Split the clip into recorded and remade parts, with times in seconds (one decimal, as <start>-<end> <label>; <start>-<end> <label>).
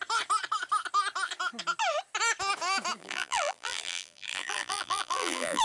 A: 0.0-3.0 recorded; 3.0-5.6 remade